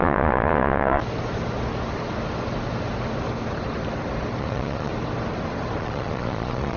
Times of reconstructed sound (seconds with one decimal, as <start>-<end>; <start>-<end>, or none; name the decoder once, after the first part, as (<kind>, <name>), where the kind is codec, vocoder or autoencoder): 0.0-1.0 (vocoder, Vocos); 4.4-4.9; 5.8-6.8